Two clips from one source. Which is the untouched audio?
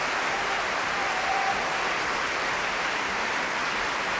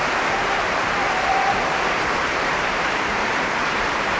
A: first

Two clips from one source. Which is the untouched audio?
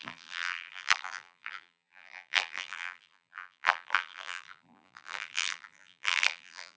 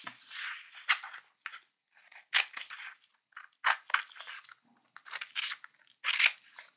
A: second